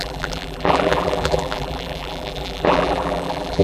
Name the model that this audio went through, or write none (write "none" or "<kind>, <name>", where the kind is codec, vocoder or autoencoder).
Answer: vocoder, BigVGAN v2